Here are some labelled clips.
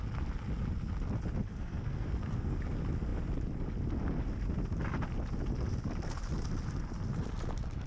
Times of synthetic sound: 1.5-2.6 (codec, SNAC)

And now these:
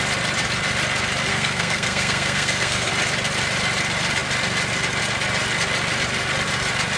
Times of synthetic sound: 1.3-2.9 (codec, SNAC)

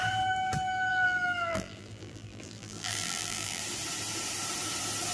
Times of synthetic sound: 0.9-3.6 (vocoder, BigVGAN v2)

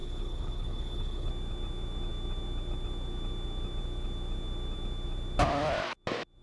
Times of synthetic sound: 0.0-1.3 (codec, HILCodec)

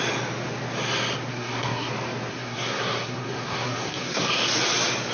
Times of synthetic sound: 1.3-1.9 (codec, SNAC); 2.3-4.2